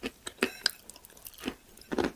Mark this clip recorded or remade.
recorded